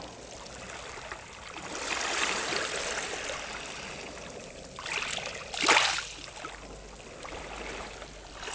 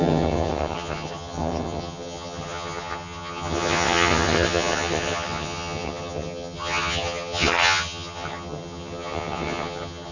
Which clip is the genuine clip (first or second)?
first